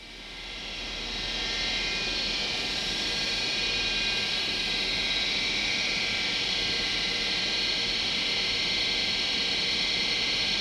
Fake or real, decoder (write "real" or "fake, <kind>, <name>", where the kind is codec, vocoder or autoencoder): real